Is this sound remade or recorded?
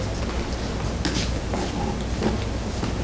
recorded